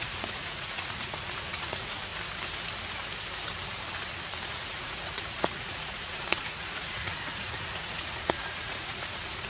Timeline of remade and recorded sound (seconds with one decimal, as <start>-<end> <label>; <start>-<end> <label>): 0.0-2.1 remade; 2.1-4.5 recorded; 4.5-9.5 remade